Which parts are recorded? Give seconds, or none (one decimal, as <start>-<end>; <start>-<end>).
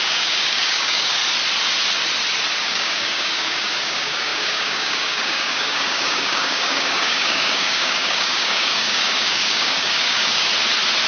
1.2-2.6; 10.5-11.1